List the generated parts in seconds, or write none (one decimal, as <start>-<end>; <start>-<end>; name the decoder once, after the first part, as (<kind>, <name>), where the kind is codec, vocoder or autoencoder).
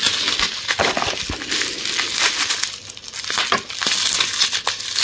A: none